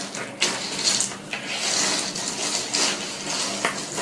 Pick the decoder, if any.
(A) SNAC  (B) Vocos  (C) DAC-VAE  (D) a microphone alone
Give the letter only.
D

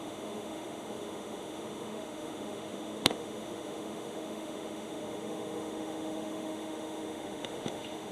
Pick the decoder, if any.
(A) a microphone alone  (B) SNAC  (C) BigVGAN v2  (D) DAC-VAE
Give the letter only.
D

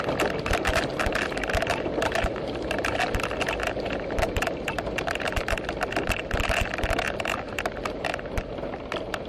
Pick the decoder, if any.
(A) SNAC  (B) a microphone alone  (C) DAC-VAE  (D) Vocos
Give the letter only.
B